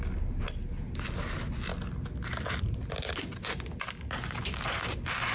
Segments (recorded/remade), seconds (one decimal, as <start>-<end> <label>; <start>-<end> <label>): 0.0-5.3 recorded